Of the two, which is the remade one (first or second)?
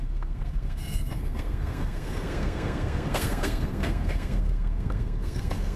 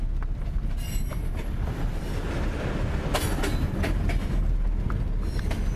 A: first